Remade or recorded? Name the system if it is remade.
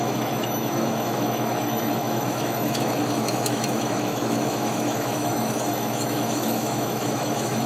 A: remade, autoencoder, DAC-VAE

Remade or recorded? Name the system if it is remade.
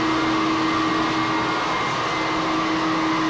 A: recorded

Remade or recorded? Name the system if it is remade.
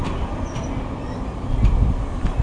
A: recorded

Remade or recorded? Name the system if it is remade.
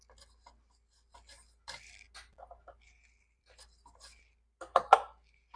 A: recorded